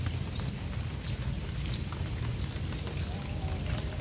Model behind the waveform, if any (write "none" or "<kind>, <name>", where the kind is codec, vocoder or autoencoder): none